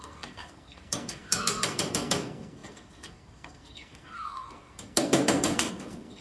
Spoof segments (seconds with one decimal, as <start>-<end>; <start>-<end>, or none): 0.0-6.2